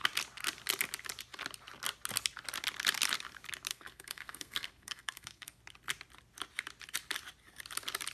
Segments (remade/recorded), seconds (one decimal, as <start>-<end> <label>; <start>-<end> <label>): 0.0-3.7 recorded; 3.7-5.6 remade; 5.6-8.1 recorded